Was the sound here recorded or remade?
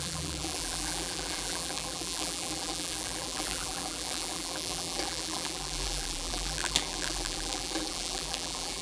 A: remade